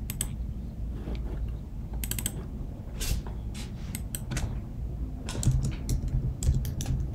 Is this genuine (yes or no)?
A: yes